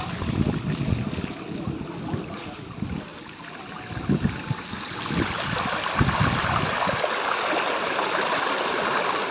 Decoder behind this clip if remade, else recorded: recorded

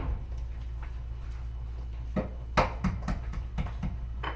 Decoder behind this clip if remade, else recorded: recorded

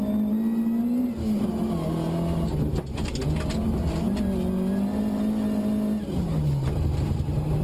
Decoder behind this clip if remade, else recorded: recorded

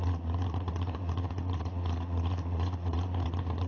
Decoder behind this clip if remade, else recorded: remade, vocoder, Vocos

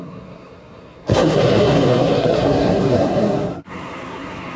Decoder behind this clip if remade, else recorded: remade, codec, SNAC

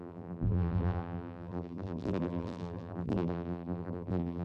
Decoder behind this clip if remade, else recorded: remade, vocoder, BigVGAN v2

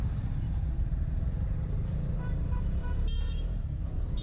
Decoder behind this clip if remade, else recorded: remade, vocoder, BigVGAN v2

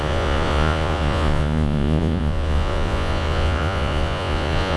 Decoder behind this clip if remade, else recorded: remade, vocoder, Vocos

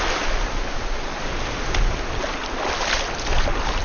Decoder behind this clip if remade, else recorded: recorded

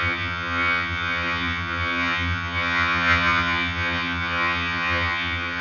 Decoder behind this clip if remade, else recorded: remade, vocoder, HiFi-GAN